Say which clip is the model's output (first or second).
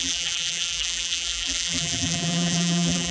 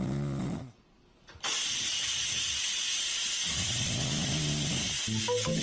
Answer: first